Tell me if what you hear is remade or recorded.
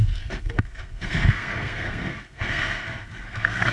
remade